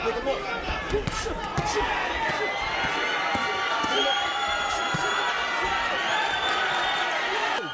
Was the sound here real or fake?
real